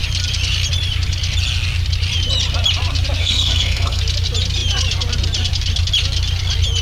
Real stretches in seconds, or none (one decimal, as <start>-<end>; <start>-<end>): 0.0-3.2; 4.0-6.8